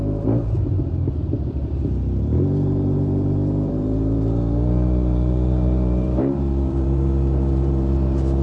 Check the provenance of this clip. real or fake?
fake